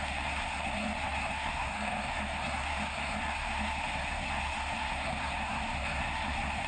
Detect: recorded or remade remade